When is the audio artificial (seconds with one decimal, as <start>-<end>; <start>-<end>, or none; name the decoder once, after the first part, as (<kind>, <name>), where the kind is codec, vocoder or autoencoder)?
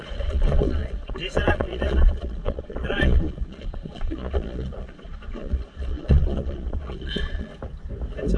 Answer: 0.0-7.5 (vocoder, Vocos)